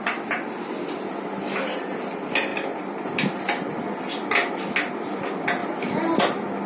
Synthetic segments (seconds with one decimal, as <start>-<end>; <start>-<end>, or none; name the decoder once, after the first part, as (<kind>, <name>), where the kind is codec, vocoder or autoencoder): none